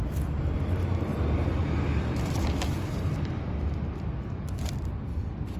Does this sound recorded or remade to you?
recorded